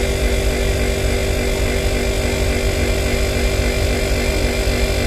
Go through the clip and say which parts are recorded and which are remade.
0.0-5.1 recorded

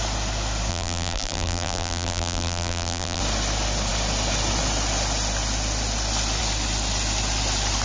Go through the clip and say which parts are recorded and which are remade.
0.0-0.7 recorded; 0.7-3.2 remade; 3.2-7.8 recorded

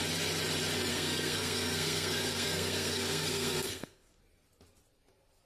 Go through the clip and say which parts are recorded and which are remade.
0.0-0.9 recorded; 0.9-4.2 remade; 4.2-5.5 recorded